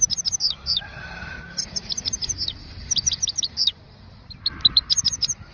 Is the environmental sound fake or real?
fake